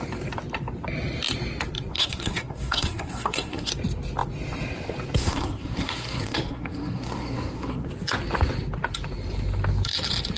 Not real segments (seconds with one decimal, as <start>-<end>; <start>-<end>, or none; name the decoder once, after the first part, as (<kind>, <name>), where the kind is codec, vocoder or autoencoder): 1.9-3.7 (codec, SNAC); 5.2-7.9